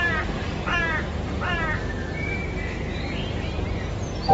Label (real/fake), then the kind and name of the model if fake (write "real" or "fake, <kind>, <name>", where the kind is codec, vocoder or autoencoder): real